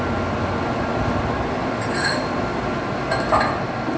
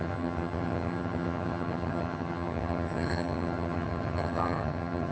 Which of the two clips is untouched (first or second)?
first